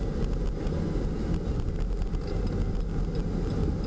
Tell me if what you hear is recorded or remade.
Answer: recorded